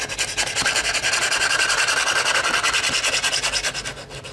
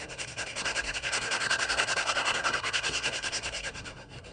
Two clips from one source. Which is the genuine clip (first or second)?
first